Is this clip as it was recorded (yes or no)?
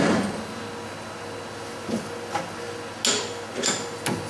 yes